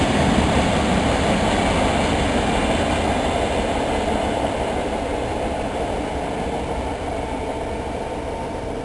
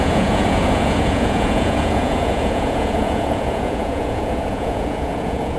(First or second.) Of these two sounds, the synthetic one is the second